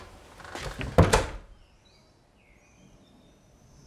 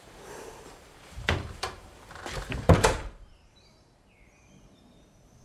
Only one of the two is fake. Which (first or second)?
second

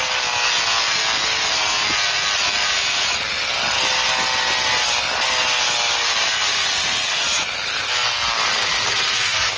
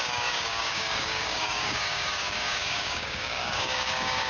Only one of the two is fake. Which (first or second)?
second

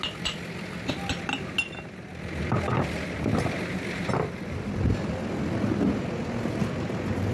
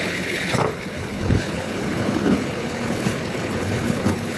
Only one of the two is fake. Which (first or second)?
second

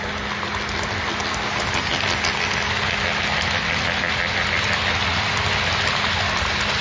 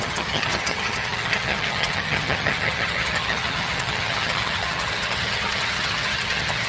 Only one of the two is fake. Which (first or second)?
second